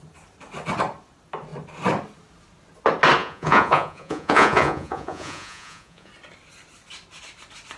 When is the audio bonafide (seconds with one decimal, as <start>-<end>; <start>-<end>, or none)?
0.0-3.2; 6.1-7.8